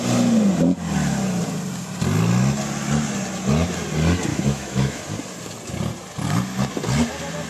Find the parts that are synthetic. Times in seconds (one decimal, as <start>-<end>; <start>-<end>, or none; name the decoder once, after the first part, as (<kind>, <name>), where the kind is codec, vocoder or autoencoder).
4.3-5.0 (autoencoder, DAC-VAE)